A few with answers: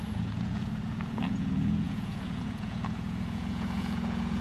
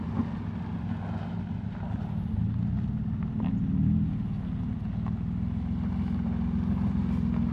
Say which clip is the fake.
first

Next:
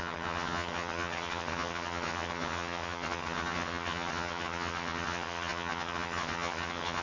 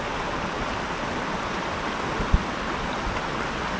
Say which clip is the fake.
first